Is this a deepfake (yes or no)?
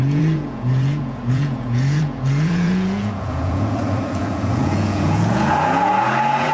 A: yes